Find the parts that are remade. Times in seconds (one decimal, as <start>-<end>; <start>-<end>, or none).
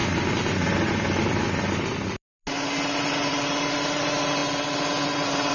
none